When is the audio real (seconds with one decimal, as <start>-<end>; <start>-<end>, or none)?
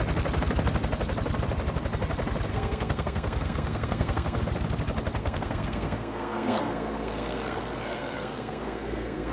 0.0-2.5; 4.4-5.2